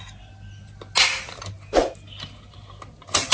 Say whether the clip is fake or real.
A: real